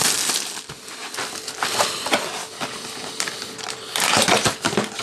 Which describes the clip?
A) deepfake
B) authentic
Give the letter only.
B